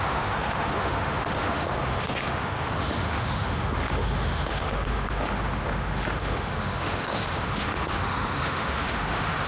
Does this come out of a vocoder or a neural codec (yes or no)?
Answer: yes